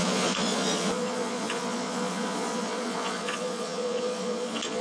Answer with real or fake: fake